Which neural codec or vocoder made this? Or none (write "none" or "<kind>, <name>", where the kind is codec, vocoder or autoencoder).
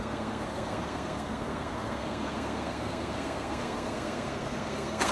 codec, SNAC